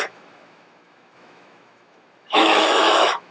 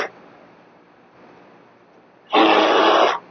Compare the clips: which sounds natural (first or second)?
second